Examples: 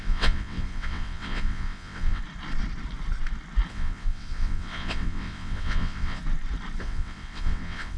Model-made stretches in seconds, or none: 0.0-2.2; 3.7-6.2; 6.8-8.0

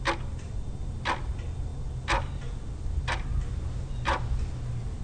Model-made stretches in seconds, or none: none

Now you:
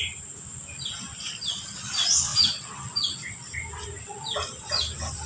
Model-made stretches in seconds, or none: none